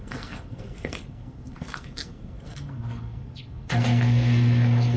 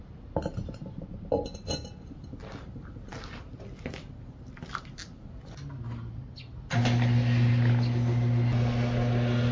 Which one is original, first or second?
second